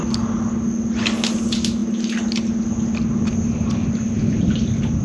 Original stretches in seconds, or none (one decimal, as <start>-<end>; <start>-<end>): 0.0-5.0